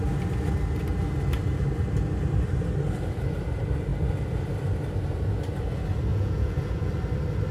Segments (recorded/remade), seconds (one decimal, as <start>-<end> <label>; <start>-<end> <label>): 0.0-6.1 recorded; 6.1-6.9 remade; 6.9-7.5 recorded